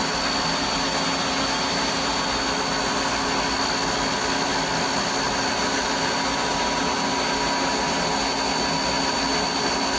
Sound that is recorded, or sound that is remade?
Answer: recorded